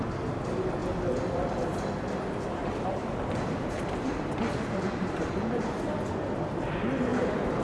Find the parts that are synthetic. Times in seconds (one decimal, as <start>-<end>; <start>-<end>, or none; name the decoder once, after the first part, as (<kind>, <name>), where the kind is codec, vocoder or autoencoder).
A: 2.6-5.6 (vocoder, BigVGAN v2); 7.1-7.6